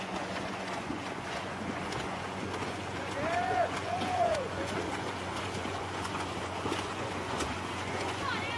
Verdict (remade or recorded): remade